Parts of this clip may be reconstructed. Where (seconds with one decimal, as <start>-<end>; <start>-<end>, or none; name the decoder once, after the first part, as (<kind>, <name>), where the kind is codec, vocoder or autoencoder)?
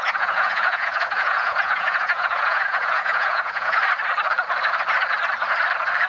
0.0-3.8 (vocoder, Vocos)